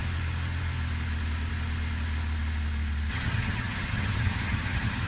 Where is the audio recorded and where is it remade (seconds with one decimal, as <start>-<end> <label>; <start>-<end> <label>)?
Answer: 0.0-3.1 recorded; 3.1-5.1 remade